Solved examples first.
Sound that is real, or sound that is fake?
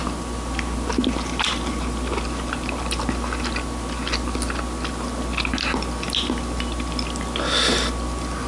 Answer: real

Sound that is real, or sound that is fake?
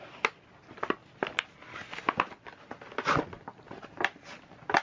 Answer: real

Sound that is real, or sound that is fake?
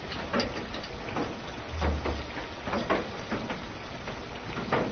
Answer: real